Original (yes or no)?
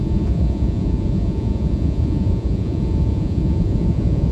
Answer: no